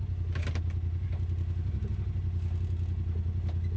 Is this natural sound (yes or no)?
yes